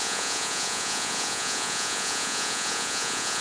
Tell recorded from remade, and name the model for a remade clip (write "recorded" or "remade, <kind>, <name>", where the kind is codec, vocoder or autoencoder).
remade, vocoder, Vocos